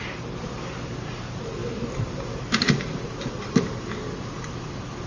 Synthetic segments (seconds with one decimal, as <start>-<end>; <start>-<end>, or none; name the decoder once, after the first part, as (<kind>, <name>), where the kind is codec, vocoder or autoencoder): 0.0-5.1 (vocoder, BigVGAN v2)